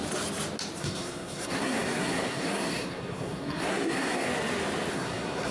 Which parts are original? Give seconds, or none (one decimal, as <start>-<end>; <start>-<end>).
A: 0.0-0.8; 4.3-4.9